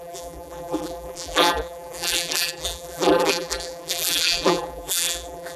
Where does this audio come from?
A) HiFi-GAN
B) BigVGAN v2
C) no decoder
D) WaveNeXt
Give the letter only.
B